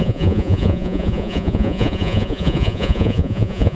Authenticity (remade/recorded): remade